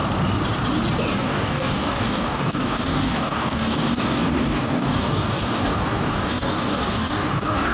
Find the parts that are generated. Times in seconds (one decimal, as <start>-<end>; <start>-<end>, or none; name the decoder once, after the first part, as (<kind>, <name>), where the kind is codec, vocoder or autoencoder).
1.2-7.7 (codec, DAC)